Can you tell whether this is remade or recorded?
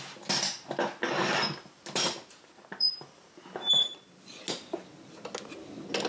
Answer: recorded